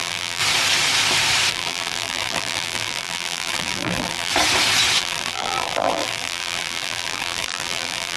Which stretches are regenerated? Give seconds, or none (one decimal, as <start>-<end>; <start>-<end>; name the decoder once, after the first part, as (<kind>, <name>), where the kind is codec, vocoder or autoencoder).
0.0-0.4 (vocoder, BigVGAN v2); 1.5-4.3; 5.0-8.2